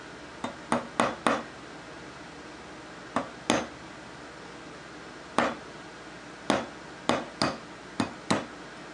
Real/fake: real